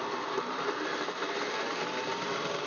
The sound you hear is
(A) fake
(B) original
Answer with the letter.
A